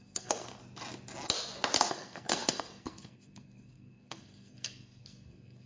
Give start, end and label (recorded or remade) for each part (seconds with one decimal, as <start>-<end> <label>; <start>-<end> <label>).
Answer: 0.0-0.6 remade; 0.6-1.9 recorded; 1.9-5.7 remade